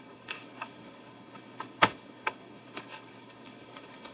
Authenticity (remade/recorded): remade